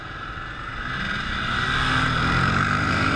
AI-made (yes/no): no